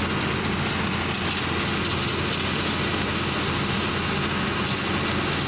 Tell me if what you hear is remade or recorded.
recorded